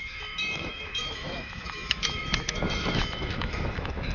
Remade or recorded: remade